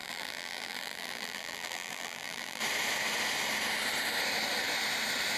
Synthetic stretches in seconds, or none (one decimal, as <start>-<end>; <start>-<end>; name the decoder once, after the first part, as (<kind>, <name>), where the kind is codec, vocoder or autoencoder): 0.0-2.6 (vocoder, BigVGAN v2)